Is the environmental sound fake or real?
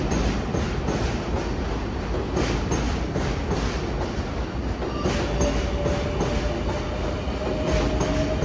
real